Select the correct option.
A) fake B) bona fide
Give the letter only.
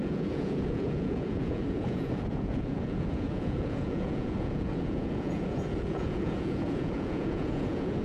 A